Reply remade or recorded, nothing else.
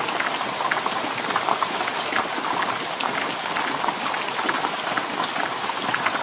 recorded